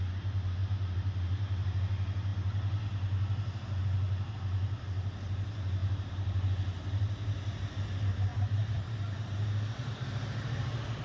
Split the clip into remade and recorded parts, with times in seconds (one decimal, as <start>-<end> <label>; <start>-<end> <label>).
0.0-0.6 recorded; 0.6-1.8 remade; 1.8-5.8 recorded; 5.8-6.5 remade; 6.5-8.3 recorded; 8.3-11.0 remade